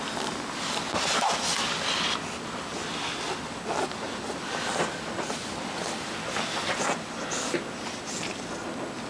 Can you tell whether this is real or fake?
real